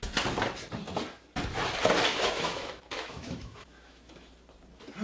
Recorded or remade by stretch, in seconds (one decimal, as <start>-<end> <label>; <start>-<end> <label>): 0.0-2.1 recorded; 2.1-4.3 remade; 4.3-5.0 recorded